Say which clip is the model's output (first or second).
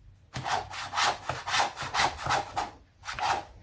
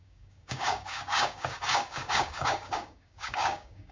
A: second